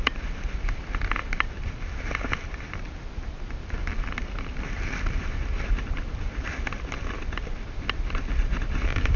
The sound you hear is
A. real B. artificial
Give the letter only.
A